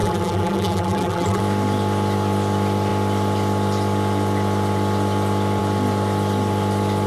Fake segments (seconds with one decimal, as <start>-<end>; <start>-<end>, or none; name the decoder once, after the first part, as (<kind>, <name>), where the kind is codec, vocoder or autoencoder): 0.0-1.4 (vocoder, BigVGAN v2)